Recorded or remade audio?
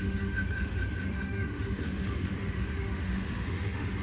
remade